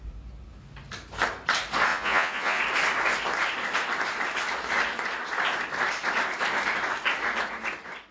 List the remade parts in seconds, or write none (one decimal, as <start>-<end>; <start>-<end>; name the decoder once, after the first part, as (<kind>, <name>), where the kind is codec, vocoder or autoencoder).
1.9-2.6 (vocoder, Vocos)